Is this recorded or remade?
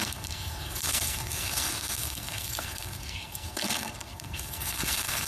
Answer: remade